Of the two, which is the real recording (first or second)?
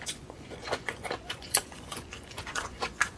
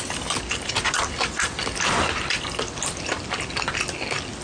second